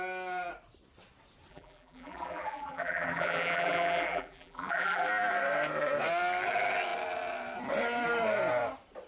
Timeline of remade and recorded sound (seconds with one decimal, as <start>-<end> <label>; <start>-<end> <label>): 0.0-1.5 recorded; 1.5-5.1 remade; 5.1-9.1 recorded